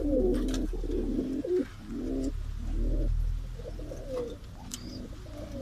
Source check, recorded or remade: recorded